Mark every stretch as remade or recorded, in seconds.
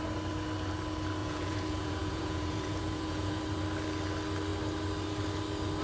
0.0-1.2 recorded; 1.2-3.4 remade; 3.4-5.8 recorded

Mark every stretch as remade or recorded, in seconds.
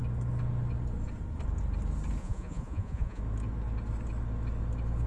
0.0-2.2 recorded; 2.2-3.2 remade; 3.2-5.1 recorded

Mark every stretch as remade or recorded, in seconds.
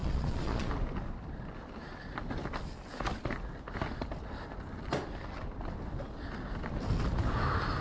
0.0-0.7 remade; 0.7-7.8 recorded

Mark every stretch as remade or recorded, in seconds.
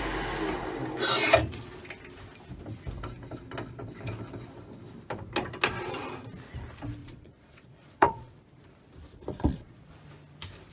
0.0-7.0 recorded; 7.0-8.4 remade; 8.4-9.3 recorded; 9.3-9.9 remade; 9.9-10.7 recorded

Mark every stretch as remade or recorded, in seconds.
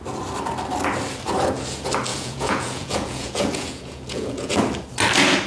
0.0-2.1 recorded; 2.1-4.6 remade; 4.6-5.5 recorded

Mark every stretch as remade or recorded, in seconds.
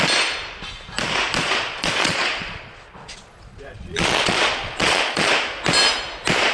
0.0-1.4 recorded; 1.4-5.3 remade; 5.3-6.5 recorded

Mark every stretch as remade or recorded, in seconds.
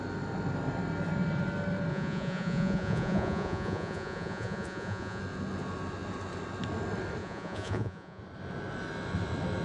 0.0-1.9 recorded; 1.9-5.2 remade; 5.2-7.2 recorded; 7.2-8.2 remade; 8.2-9.6 recorded